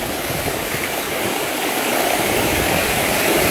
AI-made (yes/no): yes